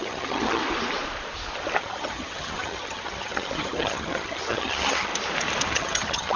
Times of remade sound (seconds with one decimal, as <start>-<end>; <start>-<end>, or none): 0.0-0.6; 1.8-5.1; 5.7-6.4